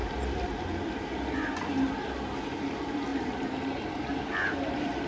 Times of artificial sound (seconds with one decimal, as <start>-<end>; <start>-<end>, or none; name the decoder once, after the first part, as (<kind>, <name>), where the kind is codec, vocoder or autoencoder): 0.0-1.4 (vocoder, BigVGAN v2); 3.1-4.2

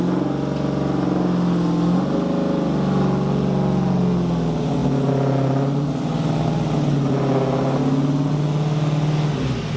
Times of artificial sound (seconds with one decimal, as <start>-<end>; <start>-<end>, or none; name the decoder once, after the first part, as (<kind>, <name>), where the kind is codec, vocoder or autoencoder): none

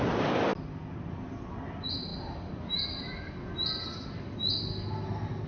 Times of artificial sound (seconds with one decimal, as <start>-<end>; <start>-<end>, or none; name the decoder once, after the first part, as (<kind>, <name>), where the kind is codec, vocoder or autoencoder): none